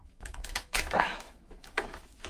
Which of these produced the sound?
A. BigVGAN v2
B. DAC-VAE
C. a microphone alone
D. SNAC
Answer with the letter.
B